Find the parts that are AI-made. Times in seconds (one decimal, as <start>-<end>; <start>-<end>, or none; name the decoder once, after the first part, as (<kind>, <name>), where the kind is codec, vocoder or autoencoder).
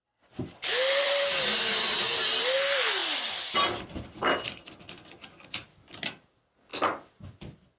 0.0-2.0 (vocoder, BigVGAN v2); 3.0-4.7